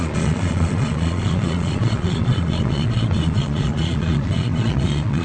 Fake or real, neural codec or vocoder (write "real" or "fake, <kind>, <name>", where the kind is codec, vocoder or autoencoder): fake, vocoder, Vocos